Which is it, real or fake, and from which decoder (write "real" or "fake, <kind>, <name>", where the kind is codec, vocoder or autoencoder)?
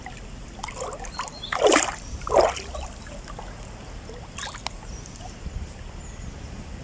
real